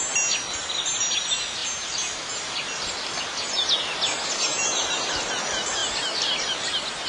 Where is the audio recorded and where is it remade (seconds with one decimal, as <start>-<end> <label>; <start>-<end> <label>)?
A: 0.0-7.1 recorded